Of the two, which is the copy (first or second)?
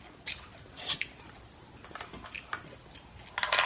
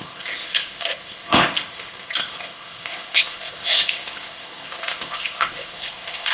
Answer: second